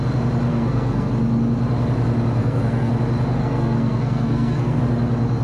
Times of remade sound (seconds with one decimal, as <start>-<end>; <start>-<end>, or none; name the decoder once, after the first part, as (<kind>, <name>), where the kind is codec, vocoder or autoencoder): 0.5-1.1 (codec, SNAC); 2.4-2.9; 3.4-4.8